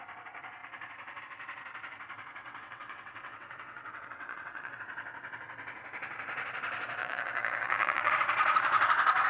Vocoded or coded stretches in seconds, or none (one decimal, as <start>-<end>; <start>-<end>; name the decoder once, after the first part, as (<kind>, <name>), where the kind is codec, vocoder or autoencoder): 2.4-4.8 (vocoder, WaveNeXt); 7.0-8.1

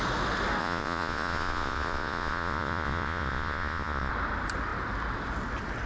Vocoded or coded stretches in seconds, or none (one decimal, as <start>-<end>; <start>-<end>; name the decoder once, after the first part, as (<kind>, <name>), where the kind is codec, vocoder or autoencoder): 0.6-4.1 (vocoder, Vocos)